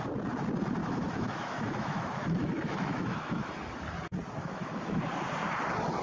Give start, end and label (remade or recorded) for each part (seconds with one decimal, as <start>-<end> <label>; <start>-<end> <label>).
0.0-0.8 recorded; 0.8-3.5 remade; 3.5-4.4 recorded; 4.4-5.0 remade; 5.0-6.0 recorded